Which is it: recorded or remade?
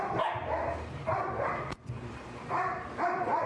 remade